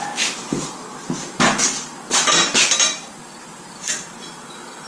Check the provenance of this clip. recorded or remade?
recorded